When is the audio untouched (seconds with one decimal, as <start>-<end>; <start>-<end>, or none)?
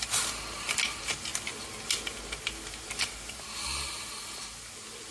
0.0-5.1